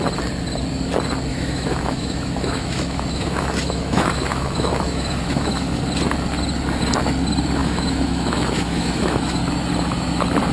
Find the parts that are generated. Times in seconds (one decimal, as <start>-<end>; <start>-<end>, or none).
1.3-5.8; 7.6-9.4